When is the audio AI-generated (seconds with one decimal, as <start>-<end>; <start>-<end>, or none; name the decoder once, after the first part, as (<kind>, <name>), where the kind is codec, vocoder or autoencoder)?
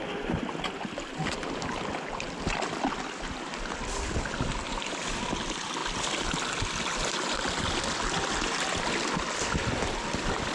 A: none